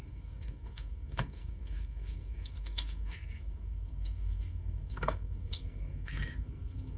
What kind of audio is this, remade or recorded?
remade